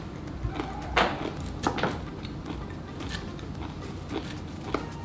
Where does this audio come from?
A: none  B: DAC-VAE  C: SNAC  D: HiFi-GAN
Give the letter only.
A